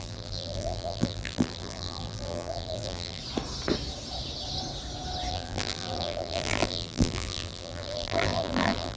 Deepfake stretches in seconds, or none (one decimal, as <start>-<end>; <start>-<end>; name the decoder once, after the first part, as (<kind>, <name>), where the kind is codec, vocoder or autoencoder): 0.0-3.2 (vocoder, BigVGAN v2); 5.3-9.0

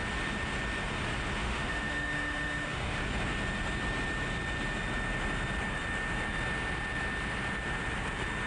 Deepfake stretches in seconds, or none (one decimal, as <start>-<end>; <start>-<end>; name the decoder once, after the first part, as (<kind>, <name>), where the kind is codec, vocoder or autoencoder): 1.4-3.0 (autoencoder, DAC-VAE)

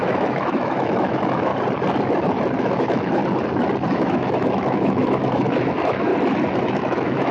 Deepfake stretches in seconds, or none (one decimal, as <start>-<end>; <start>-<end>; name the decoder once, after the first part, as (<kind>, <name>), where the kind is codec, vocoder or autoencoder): 0.0-1.5 (autoencoder, DAC-VAE); 2.6-3.2; 3.9-6.1; 6.6-7.3

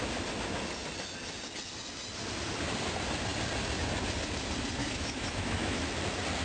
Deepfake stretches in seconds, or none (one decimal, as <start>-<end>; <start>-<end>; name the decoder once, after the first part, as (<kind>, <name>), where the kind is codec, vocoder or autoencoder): 4.8-5.8 (autoencoder, DAC-VAE)

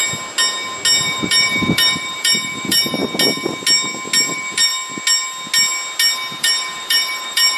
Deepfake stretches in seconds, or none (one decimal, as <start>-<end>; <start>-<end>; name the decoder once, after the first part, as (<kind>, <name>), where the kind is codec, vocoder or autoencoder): 1.0-3.0 (vocoder, BigVGAN v2); 4.3-4.7; 6.4-7.6

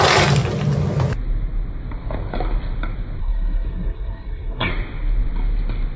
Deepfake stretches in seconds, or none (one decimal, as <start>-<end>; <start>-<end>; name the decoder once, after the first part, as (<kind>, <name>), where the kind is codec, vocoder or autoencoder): 3.2-4.7 (codec, SNAC)